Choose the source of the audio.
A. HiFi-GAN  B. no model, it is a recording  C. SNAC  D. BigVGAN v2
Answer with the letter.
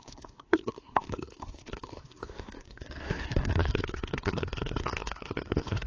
C